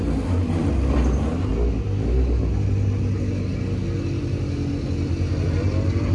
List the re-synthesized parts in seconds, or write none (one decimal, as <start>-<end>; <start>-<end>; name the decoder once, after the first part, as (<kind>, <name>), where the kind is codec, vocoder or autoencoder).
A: none